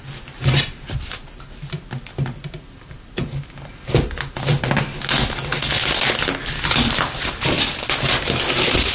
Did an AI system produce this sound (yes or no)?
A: no